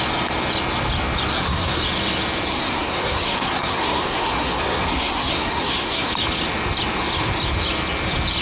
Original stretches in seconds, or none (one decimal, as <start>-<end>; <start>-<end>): 0.0-1.3; 1.8-2.5; 6.1-8.4